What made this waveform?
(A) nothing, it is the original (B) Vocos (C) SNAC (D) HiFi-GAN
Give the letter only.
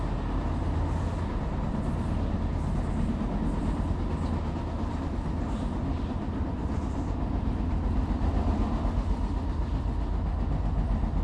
A